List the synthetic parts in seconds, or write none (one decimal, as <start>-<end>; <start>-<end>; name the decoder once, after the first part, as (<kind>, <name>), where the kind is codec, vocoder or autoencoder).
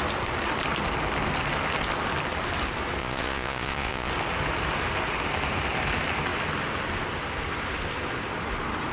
3.0-4.1 (vocoder, Vocos)